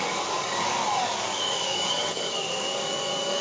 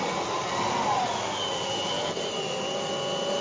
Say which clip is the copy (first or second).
first